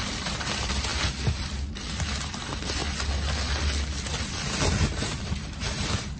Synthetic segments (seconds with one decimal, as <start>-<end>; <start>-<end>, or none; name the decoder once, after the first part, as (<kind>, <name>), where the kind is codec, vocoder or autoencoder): 0.0-0.9 (vocoder, BigVGAN v2); 1.7-2.8; 4.7-6.2